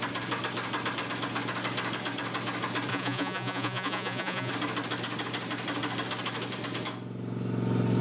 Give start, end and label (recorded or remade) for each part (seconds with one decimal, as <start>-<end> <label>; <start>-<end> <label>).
0.0-2.9 recorded; 2.9-4.5 remade; 4.5-8.0 recorded